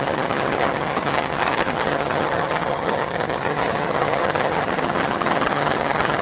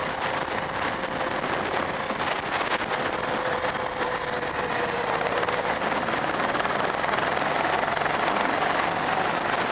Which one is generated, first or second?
first